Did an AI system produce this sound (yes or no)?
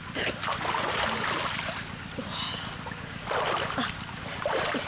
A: no